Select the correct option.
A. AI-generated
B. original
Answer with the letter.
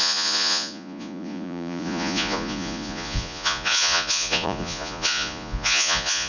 A